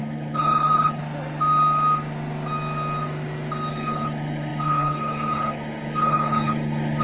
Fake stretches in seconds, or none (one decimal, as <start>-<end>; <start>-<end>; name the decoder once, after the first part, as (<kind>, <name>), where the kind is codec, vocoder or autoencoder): 0.0-1.0 (codec, HILCodec); 3.7-7.0